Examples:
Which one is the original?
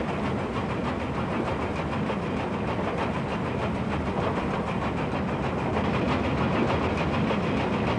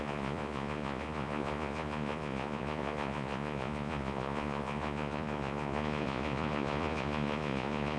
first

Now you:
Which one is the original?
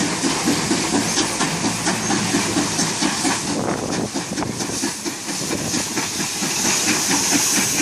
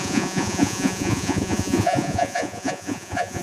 first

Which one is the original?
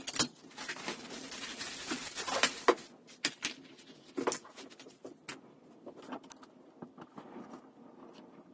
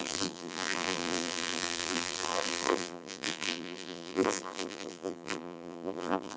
first